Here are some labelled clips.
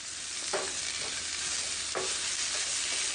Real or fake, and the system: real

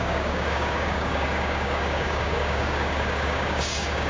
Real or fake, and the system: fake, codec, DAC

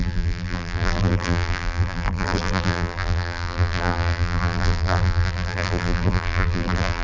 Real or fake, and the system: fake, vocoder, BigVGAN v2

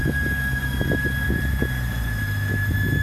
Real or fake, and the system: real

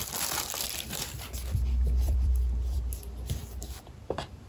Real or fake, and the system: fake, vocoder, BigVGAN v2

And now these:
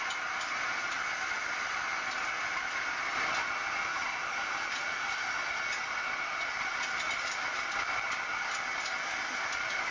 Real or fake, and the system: real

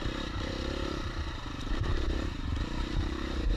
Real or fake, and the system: fake, vocoder, BigVGAN v2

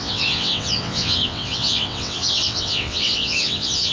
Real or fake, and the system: fake, vocoder, WaveNeXt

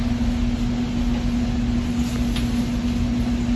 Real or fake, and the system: real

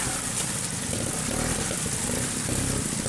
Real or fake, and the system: real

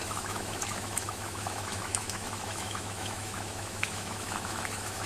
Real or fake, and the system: fake, autoencoder, DAC-VAE